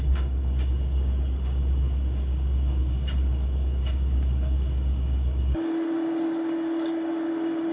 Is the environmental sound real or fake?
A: fake